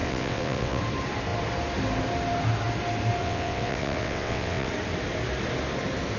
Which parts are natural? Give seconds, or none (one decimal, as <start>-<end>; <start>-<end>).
0.8-3.2; 4.7-6.2